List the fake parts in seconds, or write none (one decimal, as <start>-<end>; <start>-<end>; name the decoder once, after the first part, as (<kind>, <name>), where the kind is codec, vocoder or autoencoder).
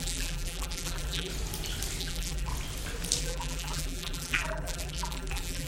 0.0-1.3 (vocoder, BigVGAN v2); 2.0-2.5; 3.2-5.7